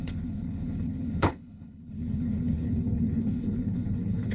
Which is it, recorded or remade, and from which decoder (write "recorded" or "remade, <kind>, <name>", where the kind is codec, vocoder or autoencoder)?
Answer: remade, codec, HILCodec